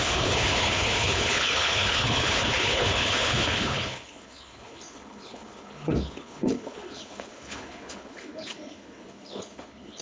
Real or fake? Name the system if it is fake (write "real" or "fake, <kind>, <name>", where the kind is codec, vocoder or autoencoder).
fake, codec, HILCodec